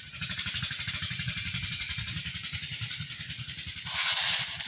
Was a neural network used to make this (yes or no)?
yes